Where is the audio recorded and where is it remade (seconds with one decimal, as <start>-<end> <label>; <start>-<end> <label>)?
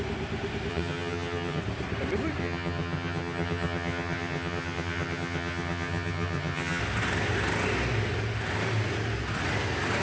0.0-0.7 recorded; 0.7-1.6 remade; 1.6-2.4 recorded; 2.4-6.8 remade; 6.8-10.0 recorded